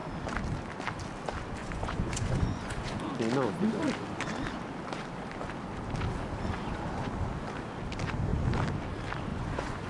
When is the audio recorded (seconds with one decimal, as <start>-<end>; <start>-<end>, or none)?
0.0-1.6; 3.1-9.3